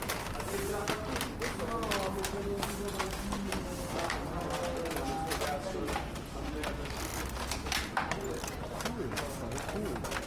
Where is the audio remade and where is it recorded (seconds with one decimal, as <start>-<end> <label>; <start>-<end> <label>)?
0.0-10.3 recorded